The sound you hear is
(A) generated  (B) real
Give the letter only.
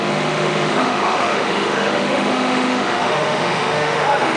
A